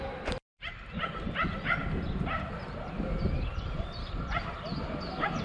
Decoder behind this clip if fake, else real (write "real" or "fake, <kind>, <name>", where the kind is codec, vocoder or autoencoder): real